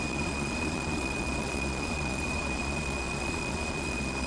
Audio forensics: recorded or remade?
remade